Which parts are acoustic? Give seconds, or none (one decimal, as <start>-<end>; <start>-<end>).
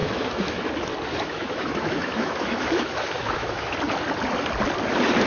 0.7-1.1; 3.7-5.3